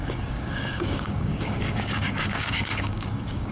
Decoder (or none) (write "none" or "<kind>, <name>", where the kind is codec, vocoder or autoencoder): codec, DAC